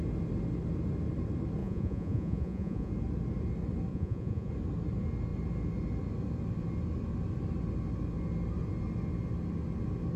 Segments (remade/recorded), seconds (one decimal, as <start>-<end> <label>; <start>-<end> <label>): 0.0-1.6 recorded; 1.6-2.9 remade; 2.9-3.9 recorded; 3.9-4.5 remade; 4.5-10.2 recorded